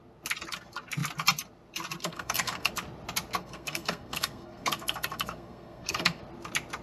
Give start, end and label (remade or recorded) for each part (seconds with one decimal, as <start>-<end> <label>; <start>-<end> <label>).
0.0-2.0 recorded; 2.0-2.7 remade; 2.7-3.4 recorded; 3.4-6.2 remade; 6.2-6.8 recorded